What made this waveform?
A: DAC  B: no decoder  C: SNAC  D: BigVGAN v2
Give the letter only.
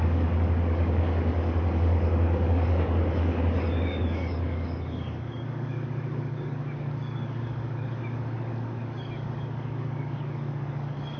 A